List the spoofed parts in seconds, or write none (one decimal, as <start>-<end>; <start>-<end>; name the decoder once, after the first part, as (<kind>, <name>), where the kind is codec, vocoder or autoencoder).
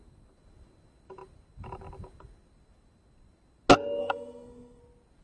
4.0-4.8 (codec, SNAC)